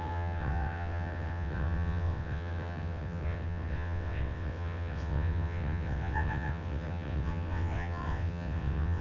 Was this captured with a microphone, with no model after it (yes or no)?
no